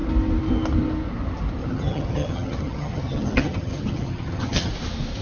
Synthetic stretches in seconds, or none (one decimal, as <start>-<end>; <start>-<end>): 1.6-4.7